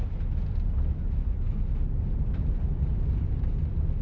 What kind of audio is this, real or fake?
real